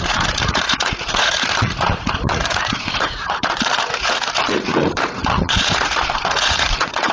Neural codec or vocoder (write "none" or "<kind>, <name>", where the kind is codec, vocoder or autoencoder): vocoder, Vocos